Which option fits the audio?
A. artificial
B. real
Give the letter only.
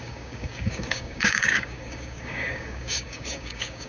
A